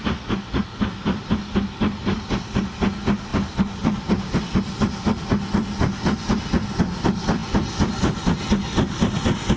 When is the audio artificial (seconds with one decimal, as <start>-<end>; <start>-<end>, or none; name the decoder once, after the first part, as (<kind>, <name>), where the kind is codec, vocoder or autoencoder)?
none